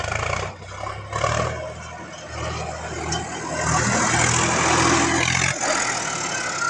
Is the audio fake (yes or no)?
no